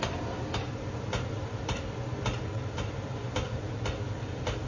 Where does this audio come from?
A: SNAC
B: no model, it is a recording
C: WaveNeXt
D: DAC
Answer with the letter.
B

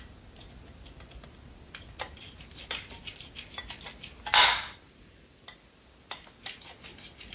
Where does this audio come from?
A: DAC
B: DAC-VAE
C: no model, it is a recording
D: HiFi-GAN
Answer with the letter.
C